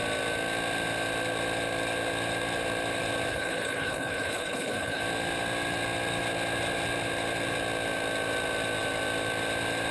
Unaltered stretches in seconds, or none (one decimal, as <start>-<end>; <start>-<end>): 0.0-3.3; 5.0-9.9